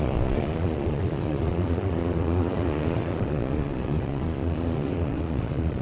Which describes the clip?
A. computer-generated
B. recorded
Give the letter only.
A